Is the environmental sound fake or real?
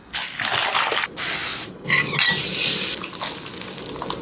real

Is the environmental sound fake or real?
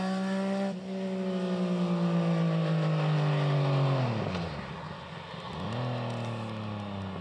real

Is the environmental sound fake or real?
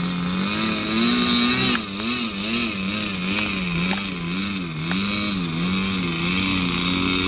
real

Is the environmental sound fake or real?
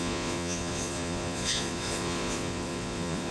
fake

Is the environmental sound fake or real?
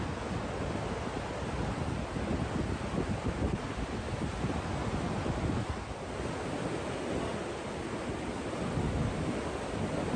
real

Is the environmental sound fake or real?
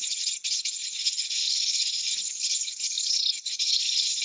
fake